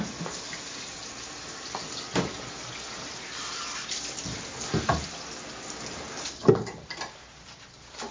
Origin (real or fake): real